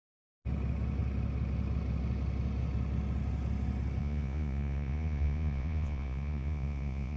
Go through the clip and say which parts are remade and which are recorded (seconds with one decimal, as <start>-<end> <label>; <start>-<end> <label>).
0.0-4.0 recorded; 4.0-7.2 remade